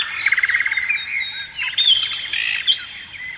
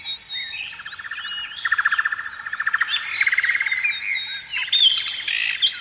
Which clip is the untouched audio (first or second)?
second